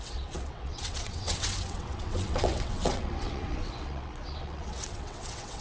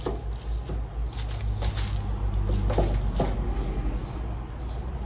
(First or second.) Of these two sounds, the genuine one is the second